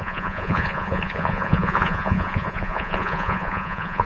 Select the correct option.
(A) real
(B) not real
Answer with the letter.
B